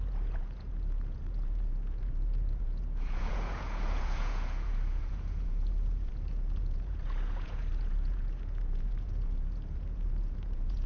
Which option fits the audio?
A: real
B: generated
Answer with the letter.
B